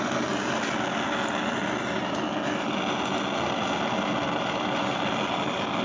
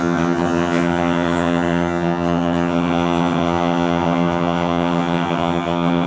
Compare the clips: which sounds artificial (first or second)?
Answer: second